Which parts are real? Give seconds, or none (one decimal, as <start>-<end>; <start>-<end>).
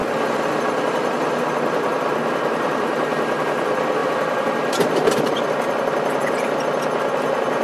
0.0-7.6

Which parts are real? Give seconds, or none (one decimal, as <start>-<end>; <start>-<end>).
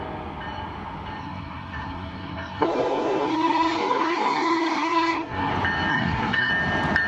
0.0-1.2; 5.5-5.9; 6.5-7.1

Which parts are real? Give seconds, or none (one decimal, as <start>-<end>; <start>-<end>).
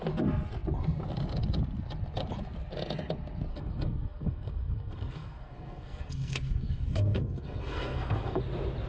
0.0-3.5; 8.4-8.9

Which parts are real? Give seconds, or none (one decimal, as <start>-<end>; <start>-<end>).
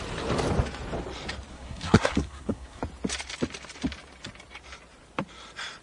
0.0-1.5; 2.8-5.8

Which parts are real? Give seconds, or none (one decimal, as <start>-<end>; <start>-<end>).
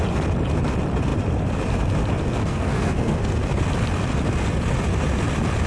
0.0-2.4; 3.3-5.7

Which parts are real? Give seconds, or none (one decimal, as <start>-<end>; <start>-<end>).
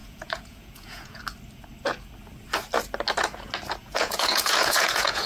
1.2-3.8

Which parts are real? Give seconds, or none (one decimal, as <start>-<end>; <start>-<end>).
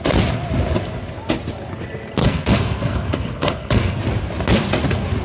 0.0-2.2; 4.0-5.2